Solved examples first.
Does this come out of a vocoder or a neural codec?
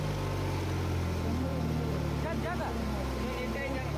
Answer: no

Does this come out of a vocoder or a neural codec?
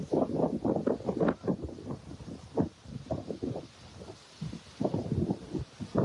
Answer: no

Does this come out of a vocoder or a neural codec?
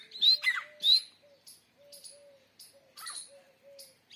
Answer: no